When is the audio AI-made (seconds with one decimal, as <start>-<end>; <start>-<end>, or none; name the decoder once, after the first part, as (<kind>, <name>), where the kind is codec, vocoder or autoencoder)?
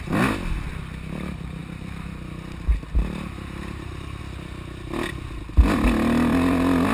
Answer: 1.6-4.2 (vocoder, BigVGAN v2)